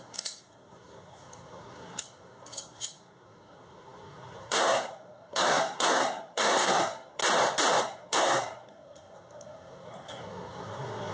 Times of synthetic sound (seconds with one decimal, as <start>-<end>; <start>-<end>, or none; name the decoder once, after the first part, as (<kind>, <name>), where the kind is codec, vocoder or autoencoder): 0.0-7.2 (codec, SNAC); 7.8-11.1